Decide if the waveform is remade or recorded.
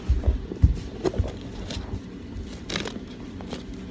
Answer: recorded